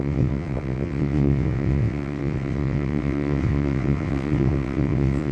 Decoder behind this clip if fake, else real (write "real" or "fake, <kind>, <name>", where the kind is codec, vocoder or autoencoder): fake, vocoder, WaveNeXt